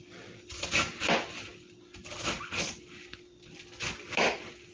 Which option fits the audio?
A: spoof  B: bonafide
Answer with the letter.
B